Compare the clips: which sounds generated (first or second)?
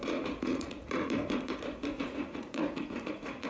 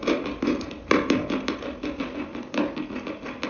first